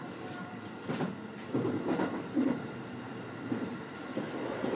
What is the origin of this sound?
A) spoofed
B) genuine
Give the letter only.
B